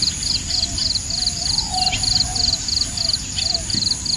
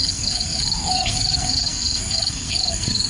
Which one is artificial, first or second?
second